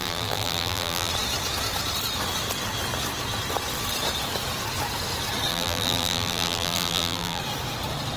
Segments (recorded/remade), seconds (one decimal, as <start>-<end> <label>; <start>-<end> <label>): 0.0-1.1 remade; 1.1-5.5 recorded; 5.5-7.4 remade; 7.4-8.2 recorded